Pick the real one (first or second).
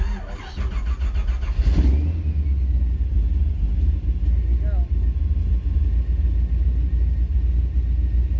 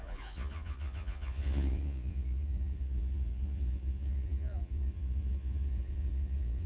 first